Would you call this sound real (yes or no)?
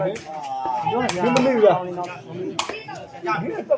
yes